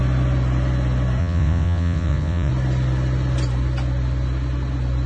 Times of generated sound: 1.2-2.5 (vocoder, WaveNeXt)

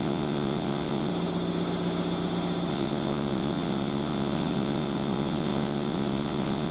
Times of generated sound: 0.0-1.1 (vocoder, WaveNeXt); 2.7-6.7